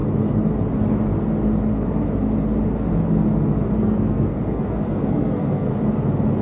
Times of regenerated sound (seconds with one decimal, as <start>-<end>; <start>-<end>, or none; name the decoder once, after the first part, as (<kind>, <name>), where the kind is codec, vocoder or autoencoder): 3.8-5.7 (codec, SNAC)